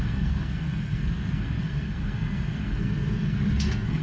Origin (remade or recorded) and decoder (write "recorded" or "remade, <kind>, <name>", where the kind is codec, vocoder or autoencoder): remade, codec, SNAC